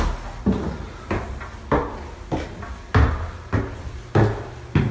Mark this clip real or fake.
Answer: real